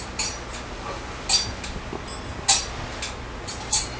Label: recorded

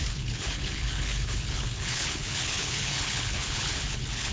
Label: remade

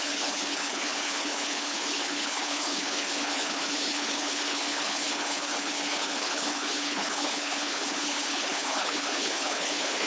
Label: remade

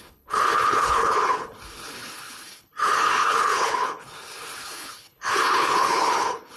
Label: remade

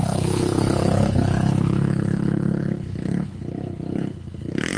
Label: remade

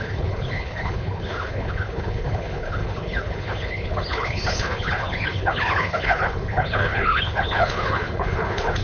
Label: remade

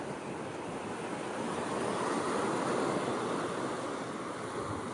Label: recorded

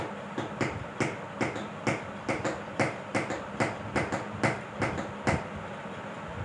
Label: recorded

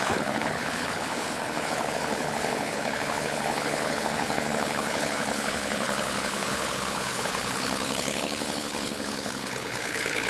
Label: remade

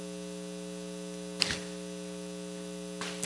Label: recorded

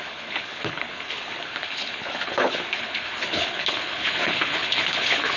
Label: remade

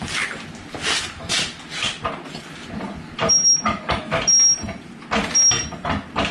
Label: recorded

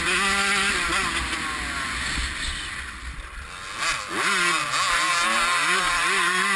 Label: recorded